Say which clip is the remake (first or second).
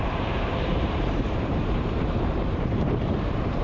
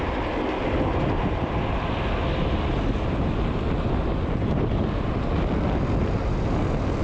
first